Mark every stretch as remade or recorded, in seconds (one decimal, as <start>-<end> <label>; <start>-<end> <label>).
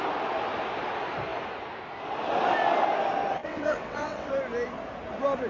0.0-3.4 recorded; 3.4-4.3 remade; 4.3-5.5 recorded